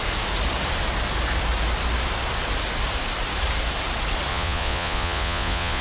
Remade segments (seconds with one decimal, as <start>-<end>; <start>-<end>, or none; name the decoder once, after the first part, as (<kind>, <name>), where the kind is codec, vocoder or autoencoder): 4.3-5.8 (vocoder, Vocos)